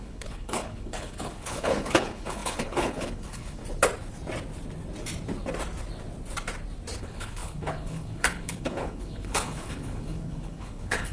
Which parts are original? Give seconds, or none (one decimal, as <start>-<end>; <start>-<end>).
3.6-7.0